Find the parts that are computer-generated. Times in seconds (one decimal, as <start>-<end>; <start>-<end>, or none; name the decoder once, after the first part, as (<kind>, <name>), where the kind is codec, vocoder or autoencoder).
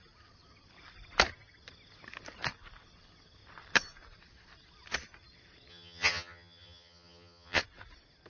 5.7-7.6 (vocoder, HiFi-GAN)